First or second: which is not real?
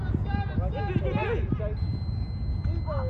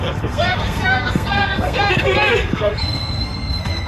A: second